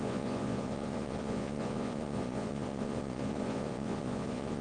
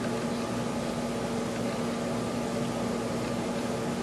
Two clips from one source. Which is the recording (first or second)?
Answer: second